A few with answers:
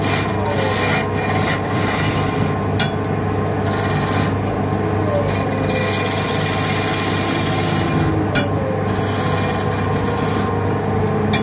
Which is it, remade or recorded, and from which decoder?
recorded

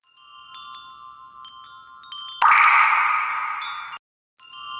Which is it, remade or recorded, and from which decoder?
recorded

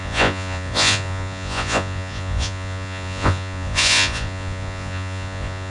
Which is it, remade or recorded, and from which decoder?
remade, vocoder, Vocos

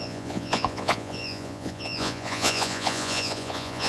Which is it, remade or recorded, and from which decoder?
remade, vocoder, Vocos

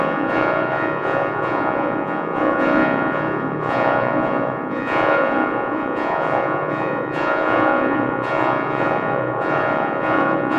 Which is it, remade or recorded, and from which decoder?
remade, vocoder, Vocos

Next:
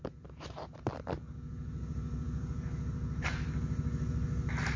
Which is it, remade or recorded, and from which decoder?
recorded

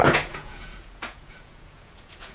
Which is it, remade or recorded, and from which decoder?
remade, vocoder, Vocos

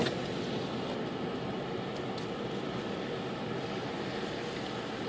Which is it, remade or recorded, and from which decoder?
recorded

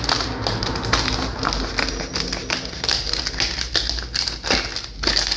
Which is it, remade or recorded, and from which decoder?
recorded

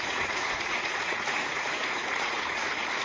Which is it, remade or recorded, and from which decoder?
remade, vocoder, Vocos